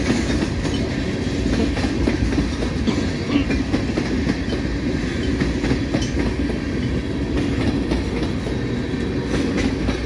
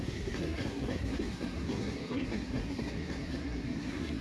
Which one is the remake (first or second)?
second